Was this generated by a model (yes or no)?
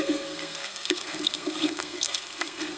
yes